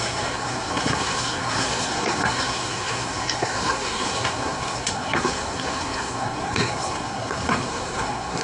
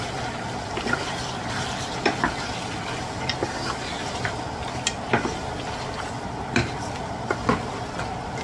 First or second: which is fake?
first